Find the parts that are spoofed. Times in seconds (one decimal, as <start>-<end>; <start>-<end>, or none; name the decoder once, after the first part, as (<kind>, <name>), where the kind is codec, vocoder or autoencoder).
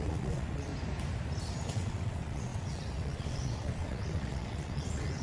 0.0-0.7 (vocoder, WaveNeXt); 1.7-5.2